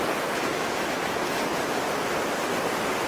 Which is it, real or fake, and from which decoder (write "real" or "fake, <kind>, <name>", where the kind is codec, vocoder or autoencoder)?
real